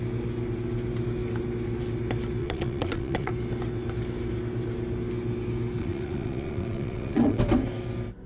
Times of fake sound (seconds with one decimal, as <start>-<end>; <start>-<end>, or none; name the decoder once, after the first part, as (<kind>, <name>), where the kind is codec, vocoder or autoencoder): 2.4-3.3 (vocoder, Vocos); 5.8-7.4